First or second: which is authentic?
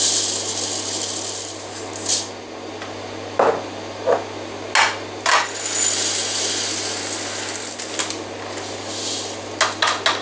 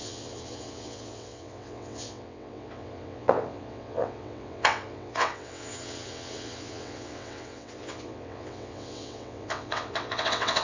first